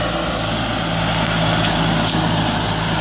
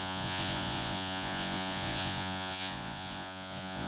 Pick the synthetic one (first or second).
second